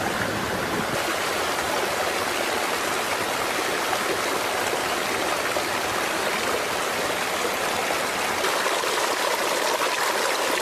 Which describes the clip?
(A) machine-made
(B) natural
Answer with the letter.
B